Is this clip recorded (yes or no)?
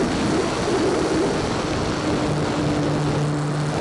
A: yes